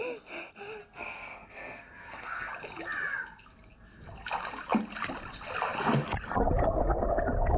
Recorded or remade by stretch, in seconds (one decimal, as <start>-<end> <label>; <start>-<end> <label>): 0.0-0.8 recorded; 0.8-2.5 remade; 2.5-7.6 recorded